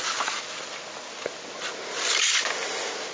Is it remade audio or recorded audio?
recorded